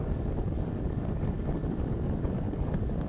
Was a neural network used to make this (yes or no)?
yes